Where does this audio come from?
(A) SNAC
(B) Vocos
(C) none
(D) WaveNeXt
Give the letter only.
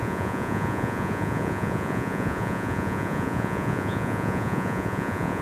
B